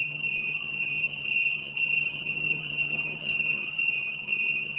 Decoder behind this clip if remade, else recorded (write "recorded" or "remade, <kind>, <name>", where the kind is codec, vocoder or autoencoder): remade, vocoder, HiFi-GAN